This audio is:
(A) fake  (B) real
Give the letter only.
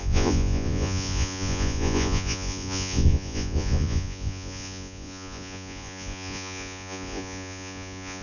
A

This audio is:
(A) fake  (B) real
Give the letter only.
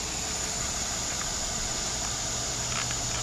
B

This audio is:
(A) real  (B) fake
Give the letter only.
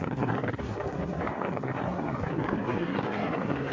B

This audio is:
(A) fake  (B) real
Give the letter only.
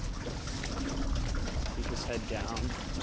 B